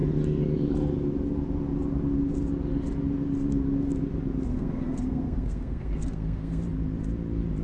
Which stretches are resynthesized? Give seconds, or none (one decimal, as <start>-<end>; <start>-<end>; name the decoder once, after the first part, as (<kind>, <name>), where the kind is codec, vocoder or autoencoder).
4.5-6.6 (codec, SNAC)